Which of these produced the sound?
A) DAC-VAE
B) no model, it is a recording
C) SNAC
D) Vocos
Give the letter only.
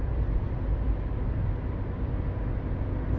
B